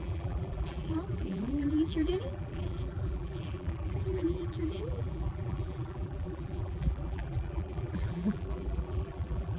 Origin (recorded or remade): remade